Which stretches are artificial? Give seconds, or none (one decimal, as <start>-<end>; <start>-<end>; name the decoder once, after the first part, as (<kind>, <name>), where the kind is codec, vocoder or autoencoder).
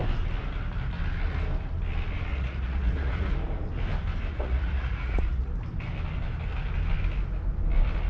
2.3-3.3 (vocoder, Vocos); 4.3-5.5